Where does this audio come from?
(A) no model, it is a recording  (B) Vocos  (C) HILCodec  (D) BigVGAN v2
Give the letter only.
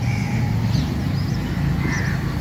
A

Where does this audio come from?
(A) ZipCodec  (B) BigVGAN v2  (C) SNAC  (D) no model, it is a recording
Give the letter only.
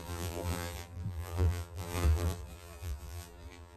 B